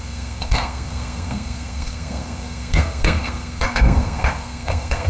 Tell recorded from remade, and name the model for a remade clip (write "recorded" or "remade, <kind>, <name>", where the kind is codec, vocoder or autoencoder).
remade, codec, SNAC